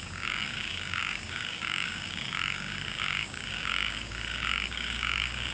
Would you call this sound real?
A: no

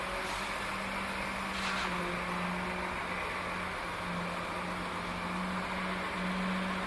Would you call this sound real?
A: yes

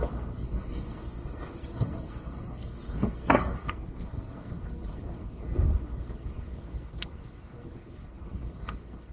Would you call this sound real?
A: no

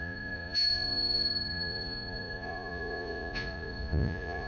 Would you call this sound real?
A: no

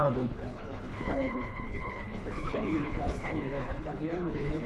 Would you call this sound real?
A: no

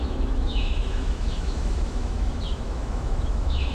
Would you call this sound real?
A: no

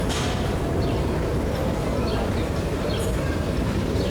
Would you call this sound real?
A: no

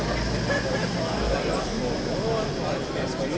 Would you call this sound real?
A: yes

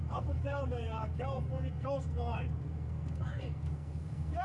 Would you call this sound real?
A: no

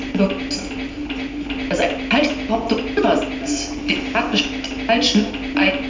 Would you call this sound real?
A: yes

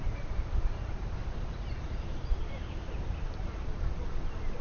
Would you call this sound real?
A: no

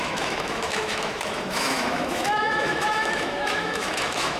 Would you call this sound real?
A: no